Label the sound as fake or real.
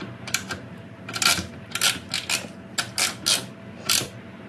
real